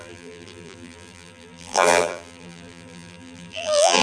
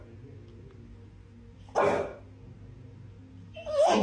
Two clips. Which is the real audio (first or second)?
second